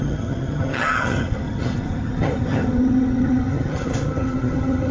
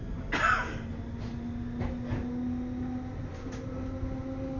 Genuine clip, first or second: second